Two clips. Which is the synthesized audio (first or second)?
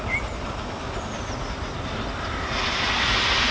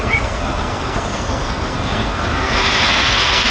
second